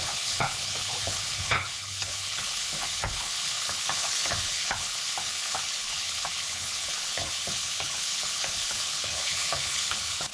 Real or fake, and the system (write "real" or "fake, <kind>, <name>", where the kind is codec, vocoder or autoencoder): fake, codec, HILCodec